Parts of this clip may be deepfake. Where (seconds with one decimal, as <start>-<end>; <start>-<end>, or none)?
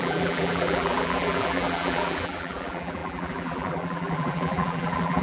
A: 0.0-5.2